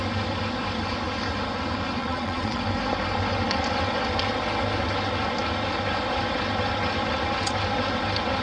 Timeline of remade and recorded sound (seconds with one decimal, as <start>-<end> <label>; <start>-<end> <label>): 0.0-2.0 recorded; 2.0-2.6 remade; 2.6-8.4 recorded